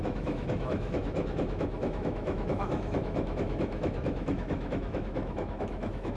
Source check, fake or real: fake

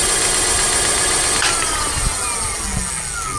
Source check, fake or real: real